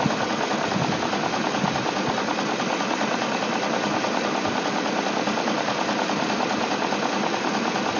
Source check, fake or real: real